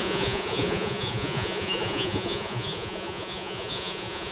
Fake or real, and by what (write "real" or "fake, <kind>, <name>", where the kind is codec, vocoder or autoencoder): fake, vocoder, Vocos